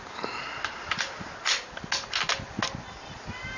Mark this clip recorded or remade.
recorded